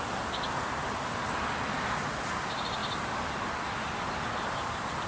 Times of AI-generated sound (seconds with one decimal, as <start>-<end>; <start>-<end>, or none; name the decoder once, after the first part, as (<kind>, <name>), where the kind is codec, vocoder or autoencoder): none